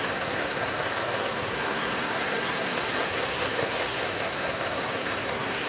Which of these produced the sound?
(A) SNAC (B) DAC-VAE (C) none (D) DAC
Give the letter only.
A